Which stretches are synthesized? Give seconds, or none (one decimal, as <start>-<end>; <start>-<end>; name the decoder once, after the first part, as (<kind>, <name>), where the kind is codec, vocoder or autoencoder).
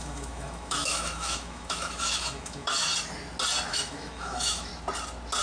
0.0-2.9 (autoencoder, DAC-VAE); 3.7-4.7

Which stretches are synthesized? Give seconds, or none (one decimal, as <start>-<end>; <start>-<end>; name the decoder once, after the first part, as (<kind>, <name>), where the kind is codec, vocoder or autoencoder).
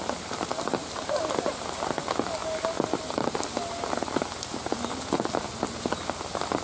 none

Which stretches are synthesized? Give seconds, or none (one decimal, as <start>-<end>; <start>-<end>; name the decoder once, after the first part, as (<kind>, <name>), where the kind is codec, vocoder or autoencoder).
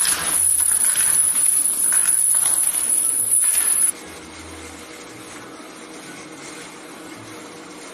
none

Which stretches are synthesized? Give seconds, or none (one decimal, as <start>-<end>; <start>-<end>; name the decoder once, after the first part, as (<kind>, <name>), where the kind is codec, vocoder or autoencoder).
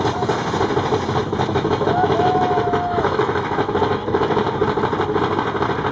1.2-4.4 (autoencoder, DAC-VAE)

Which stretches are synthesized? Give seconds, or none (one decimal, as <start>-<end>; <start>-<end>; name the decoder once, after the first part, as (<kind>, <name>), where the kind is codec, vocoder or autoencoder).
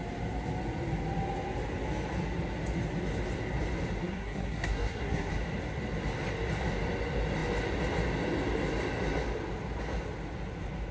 4.0-5.3 (codec, SNAC)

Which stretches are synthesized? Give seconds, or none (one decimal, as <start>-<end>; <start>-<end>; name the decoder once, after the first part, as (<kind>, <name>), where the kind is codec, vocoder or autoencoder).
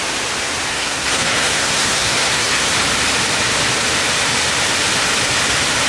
0.7-2.7 (codec, SNAC)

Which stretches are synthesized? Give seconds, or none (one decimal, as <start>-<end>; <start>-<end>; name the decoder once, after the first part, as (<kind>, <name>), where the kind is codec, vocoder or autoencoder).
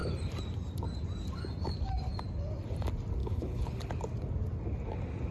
3.2-3.9 (codec, HILCodec)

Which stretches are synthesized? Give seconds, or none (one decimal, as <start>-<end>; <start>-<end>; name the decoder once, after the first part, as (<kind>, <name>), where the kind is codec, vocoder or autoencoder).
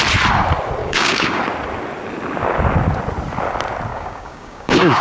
0.8-1.4 (codec, DAC); 3.9-5.0